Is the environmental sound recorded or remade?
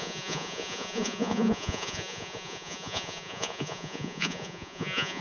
remade